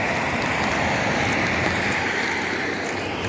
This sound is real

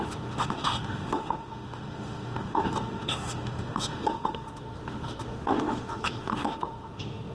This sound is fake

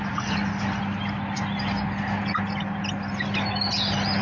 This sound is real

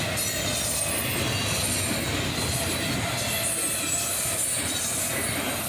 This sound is real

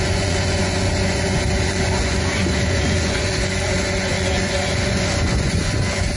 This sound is fake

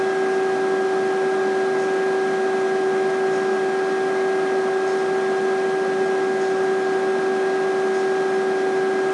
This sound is real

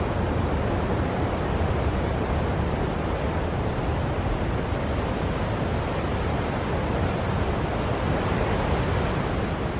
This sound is real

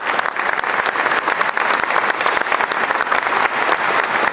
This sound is real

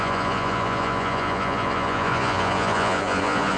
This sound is fake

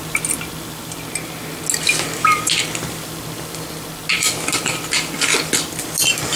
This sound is real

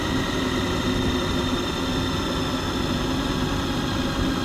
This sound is real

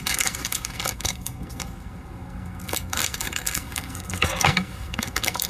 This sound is fake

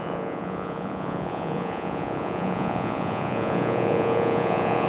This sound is fake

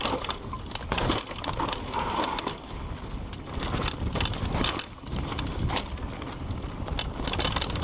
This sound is real